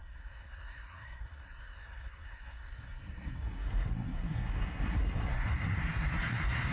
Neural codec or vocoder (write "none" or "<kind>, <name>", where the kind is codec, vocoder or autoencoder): codec, SNAC